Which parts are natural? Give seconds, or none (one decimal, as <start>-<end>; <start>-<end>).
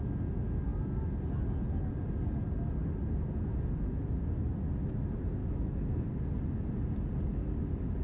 0.0-5.4; 5.9-8.0